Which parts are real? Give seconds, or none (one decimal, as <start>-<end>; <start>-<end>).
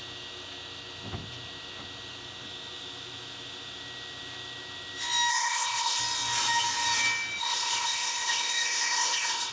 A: 0.0-5.3; 6.0-7.4